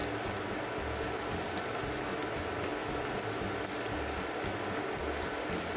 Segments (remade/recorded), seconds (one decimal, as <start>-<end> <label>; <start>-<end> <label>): 0.0-5.8 recorded